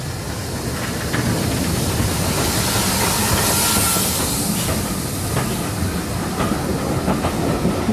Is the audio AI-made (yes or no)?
no